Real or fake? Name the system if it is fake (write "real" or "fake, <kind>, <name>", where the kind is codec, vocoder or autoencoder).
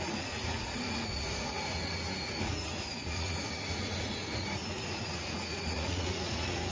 fake, vocoder, Vocos